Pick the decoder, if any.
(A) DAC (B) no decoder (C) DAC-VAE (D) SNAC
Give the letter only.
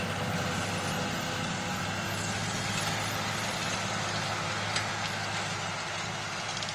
B